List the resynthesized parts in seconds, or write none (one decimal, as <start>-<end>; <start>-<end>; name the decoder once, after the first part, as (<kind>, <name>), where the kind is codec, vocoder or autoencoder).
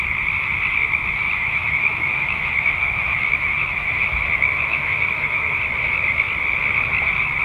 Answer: 1.2-5.6 (autoencoder, DAC-VAE)